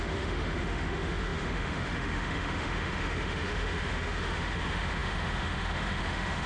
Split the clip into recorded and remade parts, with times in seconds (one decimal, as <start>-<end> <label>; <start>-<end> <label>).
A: 0.0-6.5 remade